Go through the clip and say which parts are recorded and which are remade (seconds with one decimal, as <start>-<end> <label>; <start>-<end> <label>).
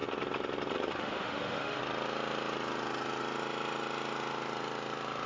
0.0-1.0 recorded; 1.0-1.8 remade; 1.8-5.3 recorded